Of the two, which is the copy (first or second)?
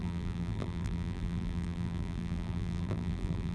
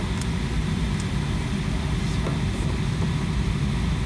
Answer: first